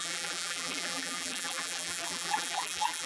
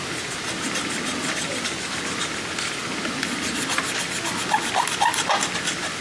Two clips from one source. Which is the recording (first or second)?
second